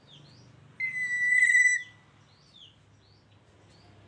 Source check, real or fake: real